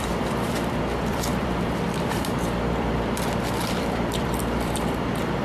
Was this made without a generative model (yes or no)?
no